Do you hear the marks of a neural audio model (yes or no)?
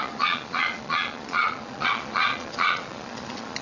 yes